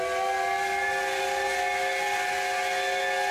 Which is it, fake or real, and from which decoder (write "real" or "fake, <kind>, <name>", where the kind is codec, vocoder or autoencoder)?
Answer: real